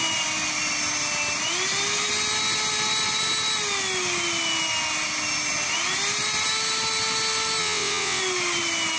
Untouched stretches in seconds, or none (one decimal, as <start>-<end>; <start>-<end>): 0.0-7.6; 8.2-9.0